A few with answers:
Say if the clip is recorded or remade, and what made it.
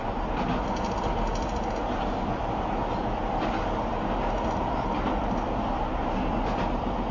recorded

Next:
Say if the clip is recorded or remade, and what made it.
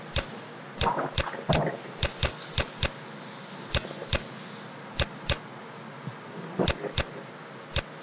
recorded